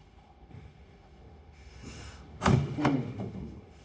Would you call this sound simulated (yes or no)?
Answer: yes